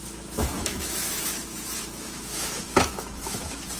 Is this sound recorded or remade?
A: remade